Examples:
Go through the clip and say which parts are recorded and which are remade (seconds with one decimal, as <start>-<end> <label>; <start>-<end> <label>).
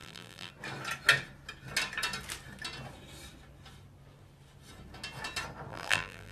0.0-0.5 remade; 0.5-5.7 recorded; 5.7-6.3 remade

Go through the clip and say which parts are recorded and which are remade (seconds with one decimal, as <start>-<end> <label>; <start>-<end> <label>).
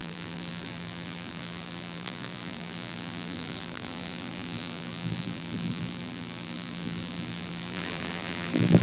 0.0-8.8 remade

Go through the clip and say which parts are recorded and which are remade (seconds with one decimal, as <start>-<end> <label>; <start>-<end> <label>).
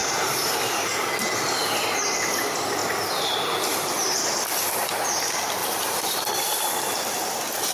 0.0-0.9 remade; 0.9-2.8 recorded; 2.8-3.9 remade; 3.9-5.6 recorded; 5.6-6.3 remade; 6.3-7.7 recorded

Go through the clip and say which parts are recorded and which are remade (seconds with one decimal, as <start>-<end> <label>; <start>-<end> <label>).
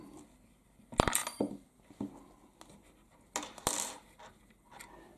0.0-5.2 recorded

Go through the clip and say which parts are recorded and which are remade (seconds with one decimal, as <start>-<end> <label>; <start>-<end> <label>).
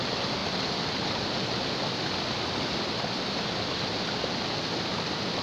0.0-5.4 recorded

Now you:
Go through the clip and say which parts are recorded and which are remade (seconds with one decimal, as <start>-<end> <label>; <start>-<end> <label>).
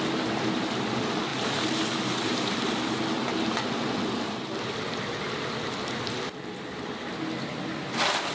0.0-8.3 recorded